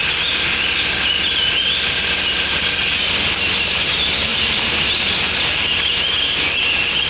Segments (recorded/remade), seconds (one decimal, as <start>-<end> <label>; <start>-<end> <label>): 0.0-7.1 recorded